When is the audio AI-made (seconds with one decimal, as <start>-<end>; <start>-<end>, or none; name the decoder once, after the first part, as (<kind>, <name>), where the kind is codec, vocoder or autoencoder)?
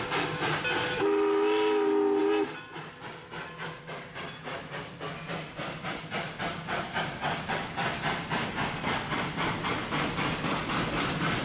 none